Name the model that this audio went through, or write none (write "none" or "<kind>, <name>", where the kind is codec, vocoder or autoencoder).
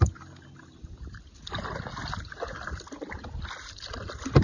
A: none